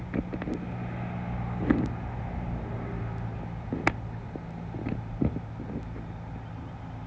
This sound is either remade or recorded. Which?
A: recorded